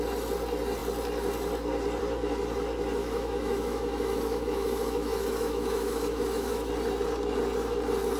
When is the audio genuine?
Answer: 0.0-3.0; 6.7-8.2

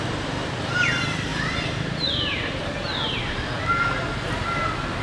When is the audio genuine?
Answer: 0.0-5.0

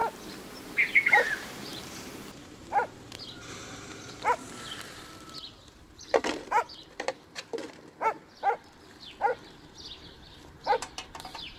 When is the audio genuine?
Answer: 0.0-0.5; 7.6-9.5

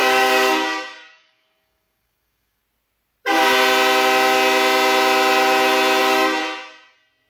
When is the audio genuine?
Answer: 2.6-6.0; 6.4-7.3